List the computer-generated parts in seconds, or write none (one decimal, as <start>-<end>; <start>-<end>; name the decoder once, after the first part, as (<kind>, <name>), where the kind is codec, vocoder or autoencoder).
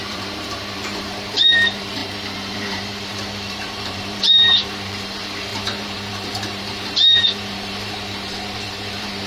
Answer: 0.0-9.3 (vocoder, BigVGAN v2)